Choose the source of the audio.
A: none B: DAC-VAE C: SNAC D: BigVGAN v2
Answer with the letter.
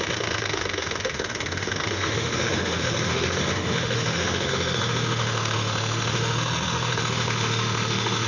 B